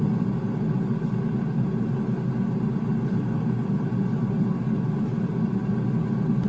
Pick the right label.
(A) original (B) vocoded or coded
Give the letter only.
A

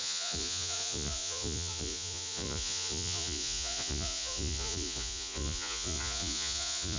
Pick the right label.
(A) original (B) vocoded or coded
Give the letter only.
B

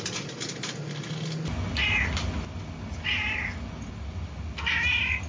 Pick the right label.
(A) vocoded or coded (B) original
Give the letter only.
B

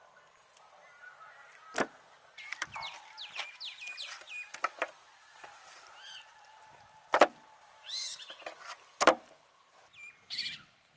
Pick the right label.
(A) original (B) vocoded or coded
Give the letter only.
A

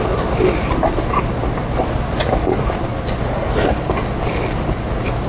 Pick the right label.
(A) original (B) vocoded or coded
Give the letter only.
A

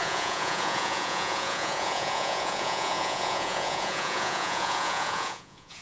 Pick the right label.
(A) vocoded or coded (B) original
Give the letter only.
A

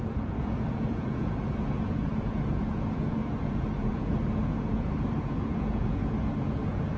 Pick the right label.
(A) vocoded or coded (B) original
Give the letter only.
A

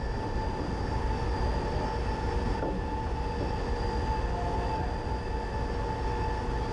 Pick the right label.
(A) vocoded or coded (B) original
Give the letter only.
B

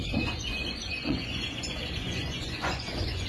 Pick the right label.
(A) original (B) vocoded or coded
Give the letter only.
B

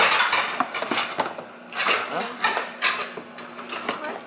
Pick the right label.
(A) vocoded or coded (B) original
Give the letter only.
B